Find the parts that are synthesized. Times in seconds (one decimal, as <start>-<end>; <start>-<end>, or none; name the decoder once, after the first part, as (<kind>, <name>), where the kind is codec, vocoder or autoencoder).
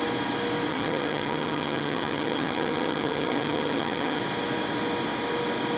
0.7-4.2 (vocoder, HiFi-GAN)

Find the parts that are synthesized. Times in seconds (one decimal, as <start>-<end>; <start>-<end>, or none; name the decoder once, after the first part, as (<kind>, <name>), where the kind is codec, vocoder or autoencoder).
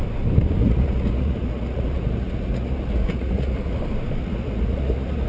0.6-3.8 (vocoder, Vocos); 4.2-5.3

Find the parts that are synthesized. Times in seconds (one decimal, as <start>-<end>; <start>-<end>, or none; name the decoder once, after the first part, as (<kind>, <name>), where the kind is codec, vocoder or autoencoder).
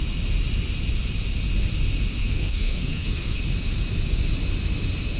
2.2-3.4 (codec, SNAC)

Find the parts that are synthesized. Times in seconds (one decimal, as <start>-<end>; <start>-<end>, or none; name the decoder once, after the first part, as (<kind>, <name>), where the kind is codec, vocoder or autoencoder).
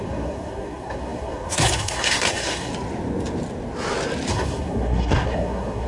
0.0-2.7 (codec, SNAC); 4.3-5.9